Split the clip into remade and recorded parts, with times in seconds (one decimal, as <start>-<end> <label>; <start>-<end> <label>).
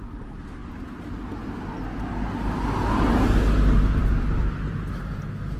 0.0-5.6 recorded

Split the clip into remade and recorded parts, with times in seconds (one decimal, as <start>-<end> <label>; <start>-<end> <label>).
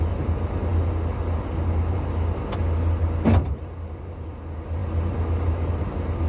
0.0-6.3 recorded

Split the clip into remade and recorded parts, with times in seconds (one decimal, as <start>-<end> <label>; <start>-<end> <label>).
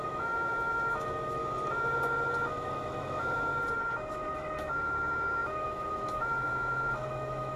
0.0-1.4 remade; 1.4-2.5 recorded; 2.5-3.5 remade; 3.5-4.1 recorded; 4.1-7.6 remade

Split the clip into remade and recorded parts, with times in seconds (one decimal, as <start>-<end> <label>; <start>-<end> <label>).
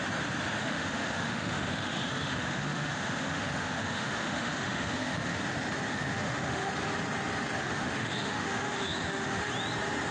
0.0-0.6 recorded; 0.6-5.4 remade; 5.4-5.9 recorded; 5.9-6.7 remade; 6.7-7.6 recorded; 7.6-9.5 remade; 9.5-10.1 recorded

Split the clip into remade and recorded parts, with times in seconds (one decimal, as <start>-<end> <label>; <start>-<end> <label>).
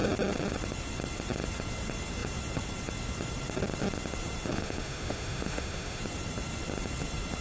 0.0-4.5 recorded; 4.5-6.0 remade; 6.0-7.4 recorded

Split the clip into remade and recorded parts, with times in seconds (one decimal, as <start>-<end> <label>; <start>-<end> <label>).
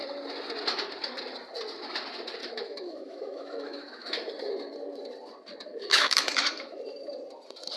0.0-2.4 recorded; 2.4-4.3 remade; 4.3-5.7 recorded; 5.7-6.8 remade; 6.8-7.8 recorded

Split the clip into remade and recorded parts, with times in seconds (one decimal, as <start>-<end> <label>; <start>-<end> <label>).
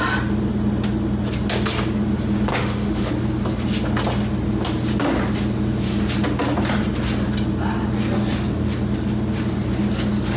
0.0-2.5 recorded; 2.5-3.1 remade; 3.1-10.4 recorded